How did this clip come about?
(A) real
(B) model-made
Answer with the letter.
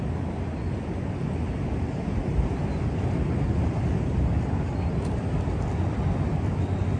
A